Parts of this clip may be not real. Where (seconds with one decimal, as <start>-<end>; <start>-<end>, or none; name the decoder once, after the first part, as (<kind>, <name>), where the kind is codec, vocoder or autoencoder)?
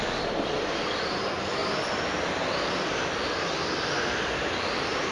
none